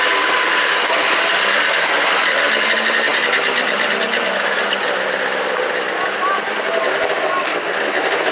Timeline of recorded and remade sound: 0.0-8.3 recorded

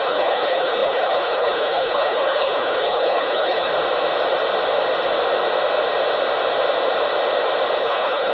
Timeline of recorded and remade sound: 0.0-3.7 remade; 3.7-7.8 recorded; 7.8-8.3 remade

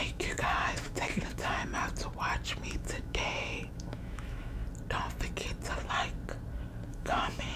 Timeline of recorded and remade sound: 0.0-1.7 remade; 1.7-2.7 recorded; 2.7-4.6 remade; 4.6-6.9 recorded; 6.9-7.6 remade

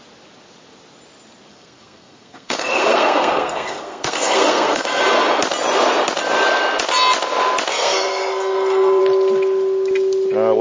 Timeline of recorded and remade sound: 0.0-1.5 recorded; 1.5-5.0 remade; 5.0-7.7 recorded; 7.7-9.0 remade; 9.0-10.6 recorded